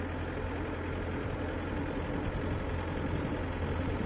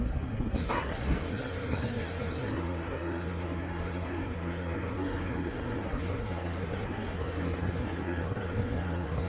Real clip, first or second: first